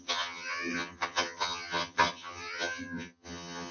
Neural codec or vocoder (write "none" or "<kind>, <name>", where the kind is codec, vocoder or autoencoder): vocoder, HiFi-GAN